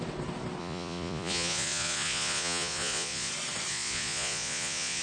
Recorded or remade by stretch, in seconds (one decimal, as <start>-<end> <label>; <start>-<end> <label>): 0.0-0.6 recorded; 0.6-3.3 remade; 3.3-3.7 recorded; 3.7-5.0 remade